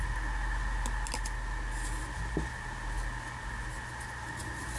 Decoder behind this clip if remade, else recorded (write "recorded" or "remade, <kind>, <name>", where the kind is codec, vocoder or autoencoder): recorded